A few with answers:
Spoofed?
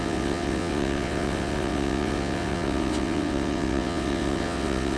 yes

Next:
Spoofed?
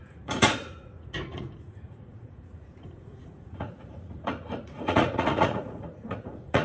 yes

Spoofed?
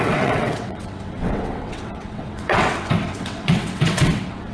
yes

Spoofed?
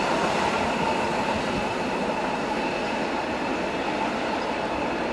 no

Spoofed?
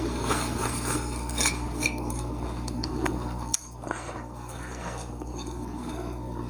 yes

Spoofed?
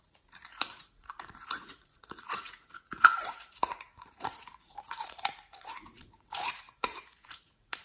yes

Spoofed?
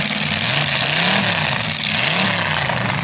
no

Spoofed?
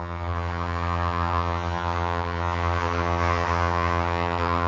yes